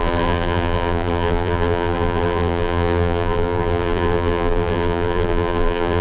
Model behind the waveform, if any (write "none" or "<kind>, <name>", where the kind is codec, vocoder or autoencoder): vocoder, BigVGAN v2